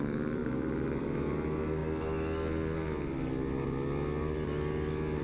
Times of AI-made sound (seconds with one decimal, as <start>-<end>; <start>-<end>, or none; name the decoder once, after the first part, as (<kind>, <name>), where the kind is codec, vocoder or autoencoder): 0.0-0.4 (vocoder, BigVGAN v2); 1.0-1.8; 4.2-5.2